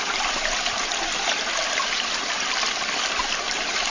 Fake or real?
real